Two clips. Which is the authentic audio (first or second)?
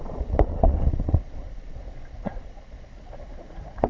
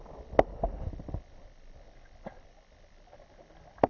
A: second